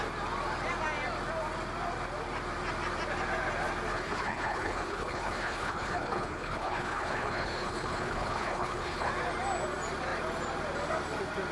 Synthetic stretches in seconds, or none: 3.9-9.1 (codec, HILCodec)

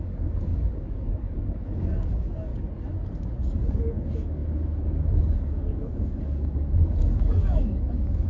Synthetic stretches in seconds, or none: 0.0-2.5 (codec, DAC); 3.2-8.3

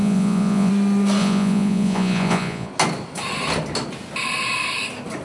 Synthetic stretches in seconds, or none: 0.0-0.7 (vocoder, Vocos); 1.2-2.7